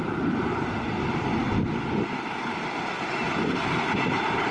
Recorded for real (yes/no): yes